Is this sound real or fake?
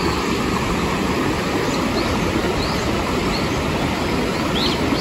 real